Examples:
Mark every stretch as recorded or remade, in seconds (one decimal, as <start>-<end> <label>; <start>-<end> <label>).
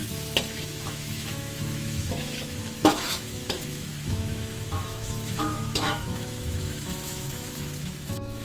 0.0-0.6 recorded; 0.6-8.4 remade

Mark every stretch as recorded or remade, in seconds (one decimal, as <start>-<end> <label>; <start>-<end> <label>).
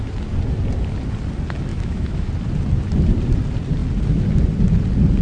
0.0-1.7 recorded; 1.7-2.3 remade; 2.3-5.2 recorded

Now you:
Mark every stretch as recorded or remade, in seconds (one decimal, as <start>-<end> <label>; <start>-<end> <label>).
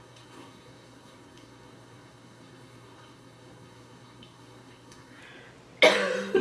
0.0-5.2 remade; 5.2-6.4 recorded